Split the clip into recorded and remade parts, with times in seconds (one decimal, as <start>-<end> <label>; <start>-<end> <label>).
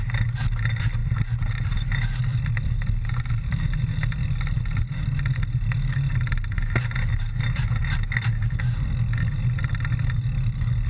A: 0.0-10.9 recorded